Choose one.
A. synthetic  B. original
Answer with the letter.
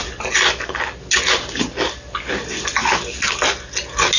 B